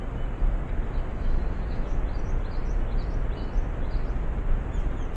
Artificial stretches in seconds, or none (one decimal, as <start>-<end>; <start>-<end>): 1.1-2.0